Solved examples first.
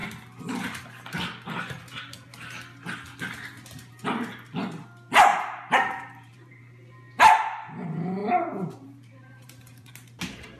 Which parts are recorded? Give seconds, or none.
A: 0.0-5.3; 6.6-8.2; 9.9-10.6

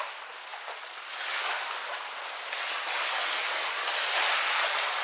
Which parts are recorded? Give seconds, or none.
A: 0.0-3.4

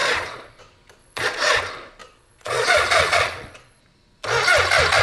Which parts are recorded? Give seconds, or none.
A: 0.6-1.0; 1.6-2.0; 3.8-5.0

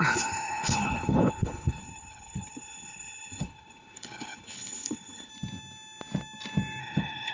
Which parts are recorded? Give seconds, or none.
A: 5.3-6.8

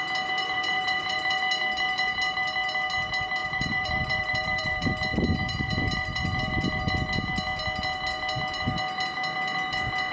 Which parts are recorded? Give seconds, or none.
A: 0.0-0.4; 1.4-3.4; 4.9-5.4; 6.8-10.1

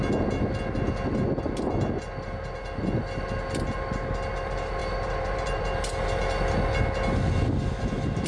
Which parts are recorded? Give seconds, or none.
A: 0.0-4.8; 5.6-8.3

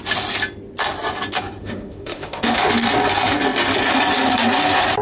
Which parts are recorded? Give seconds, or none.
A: 0.0-1.6; 2.7-5.0